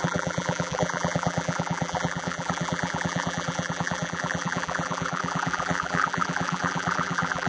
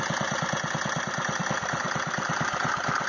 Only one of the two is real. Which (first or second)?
second